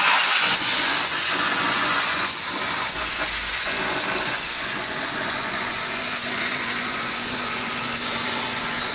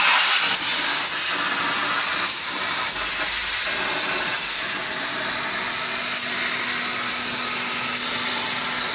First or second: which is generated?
first